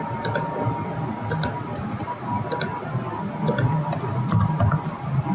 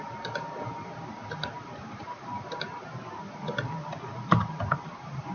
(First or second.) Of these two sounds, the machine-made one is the second